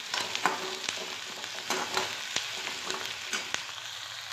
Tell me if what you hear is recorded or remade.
recorded